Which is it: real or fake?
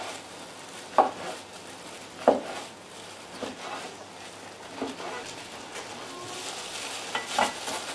real